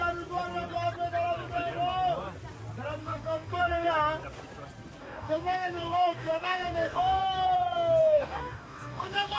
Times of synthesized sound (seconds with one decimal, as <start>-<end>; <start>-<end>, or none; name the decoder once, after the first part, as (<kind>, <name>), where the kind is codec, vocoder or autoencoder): 3.0-3.9 (codec, DAC); 5.0-7.2; 8.0-9.4